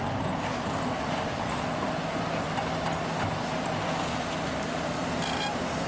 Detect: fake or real real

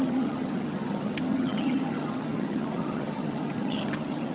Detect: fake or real fake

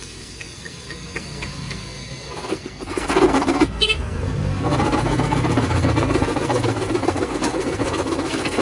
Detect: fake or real fake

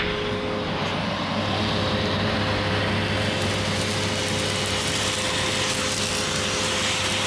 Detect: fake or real real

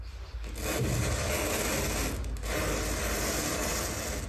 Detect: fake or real real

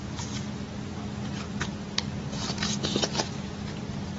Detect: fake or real real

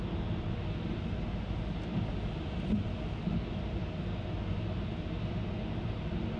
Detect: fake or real real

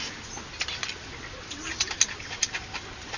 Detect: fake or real real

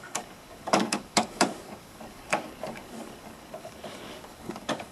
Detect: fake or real fake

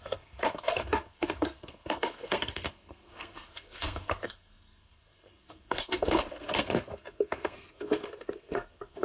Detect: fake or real fake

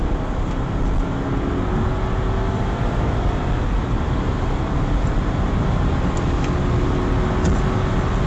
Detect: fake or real real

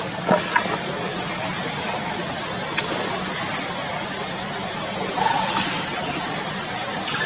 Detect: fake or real real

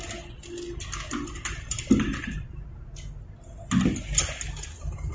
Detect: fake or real real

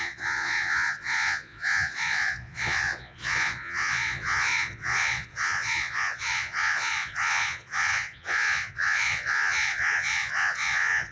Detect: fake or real fake